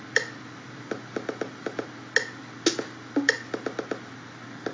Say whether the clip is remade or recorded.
recorded